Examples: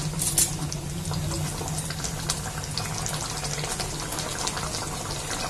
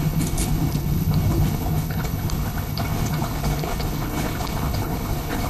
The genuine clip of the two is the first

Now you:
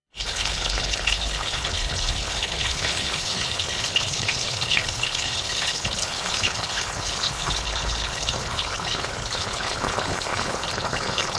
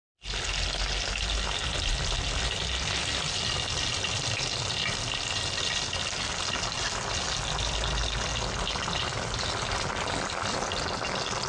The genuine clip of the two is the second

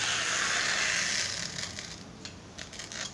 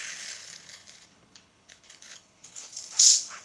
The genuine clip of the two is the first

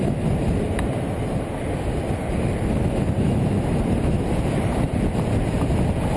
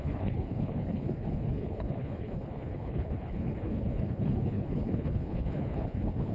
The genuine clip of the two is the first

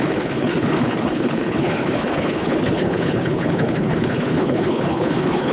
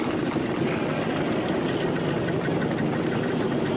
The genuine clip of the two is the second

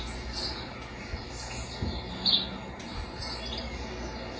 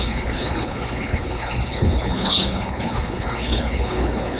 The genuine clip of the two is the first